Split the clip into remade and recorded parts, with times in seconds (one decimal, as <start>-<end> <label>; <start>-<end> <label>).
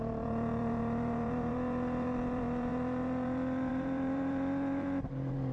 0.0-5.5 remade